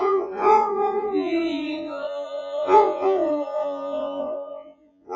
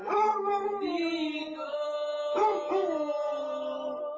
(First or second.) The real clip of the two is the second